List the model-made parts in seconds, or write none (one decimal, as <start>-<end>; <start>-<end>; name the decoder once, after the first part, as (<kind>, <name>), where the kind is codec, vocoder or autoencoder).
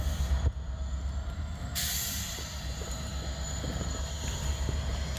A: 0.0-3.1 (vocoder, BigVGAN v2); 3.8-5.2